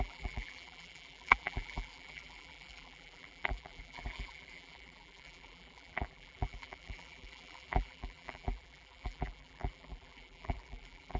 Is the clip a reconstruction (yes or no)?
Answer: yes